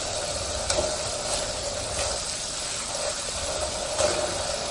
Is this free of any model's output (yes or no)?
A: yes